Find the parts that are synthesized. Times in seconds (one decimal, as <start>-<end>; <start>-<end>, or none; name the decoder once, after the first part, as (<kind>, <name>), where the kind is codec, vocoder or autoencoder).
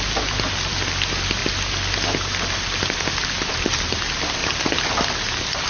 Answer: none